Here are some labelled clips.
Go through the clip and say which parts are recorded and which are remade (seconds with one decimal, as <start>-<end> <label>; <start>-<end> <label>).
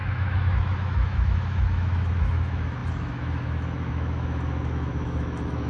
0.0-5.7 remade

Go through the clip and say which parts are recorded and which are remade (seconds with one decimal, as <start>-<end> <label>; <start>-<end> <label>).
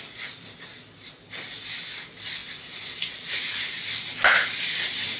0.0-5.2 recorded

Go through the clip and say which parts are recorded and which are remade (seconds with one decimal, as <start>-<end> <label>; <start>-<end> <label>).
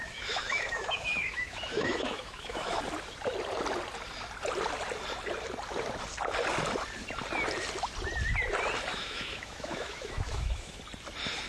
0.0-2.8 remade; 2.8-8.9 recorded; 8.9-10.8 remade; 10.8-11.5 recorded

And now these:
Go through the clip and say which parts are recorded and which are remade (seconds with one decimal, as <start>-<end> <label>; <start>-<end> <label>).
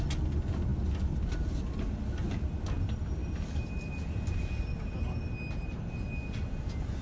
0.0-7.0 recorded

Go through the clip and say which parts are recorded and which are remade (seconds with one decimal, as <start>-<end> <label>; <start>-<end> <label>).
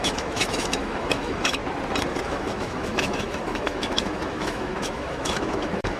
0.0-1.6 remade; 1.6-2.2 recorded; 2.2-6.0 remade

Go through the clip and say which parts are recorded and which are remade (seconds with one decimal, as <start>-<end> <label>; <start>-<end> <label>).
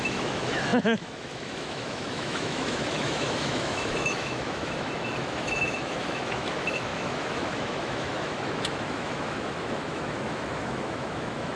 0.0-11.6 remade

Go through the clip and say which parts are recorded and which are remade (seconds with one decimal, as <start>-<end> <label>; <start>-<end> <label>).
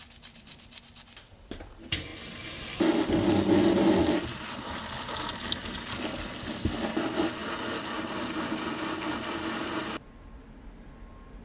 0.0-11.4 recorded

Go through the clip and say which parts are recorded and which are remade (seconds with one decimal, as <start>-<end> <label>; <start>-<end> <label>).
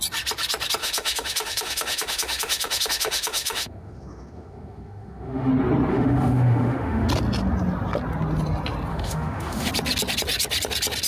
0.0-0.8 recorded; 0.8-5.5 remade; 5.5-5.9 recorded; 5.9-7.1 remade; 7.1-8.9 recorded; 8.9-9.7 remade; 9.7-11.1 recorded